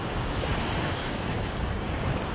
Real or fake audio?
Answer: fake